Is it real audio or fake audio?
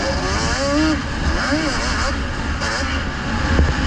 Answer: real